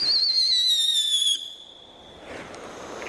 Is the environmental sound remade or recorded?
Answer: recorded